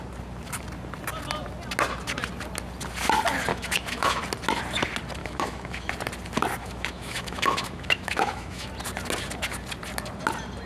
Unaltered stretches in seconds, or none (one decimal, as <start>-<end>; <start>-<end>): 0.0-3.5; 4.2-5.2; 5.9-6.6; 8.7-10.7